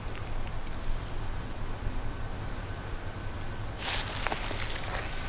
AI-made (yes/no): no